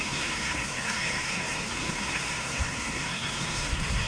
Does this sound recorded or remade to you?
remade